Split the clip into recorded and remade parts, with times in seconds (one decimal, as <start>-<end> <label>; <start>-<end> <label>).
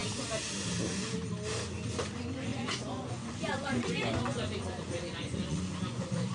0.0-2.5 recorded; 2.5-6.3 remade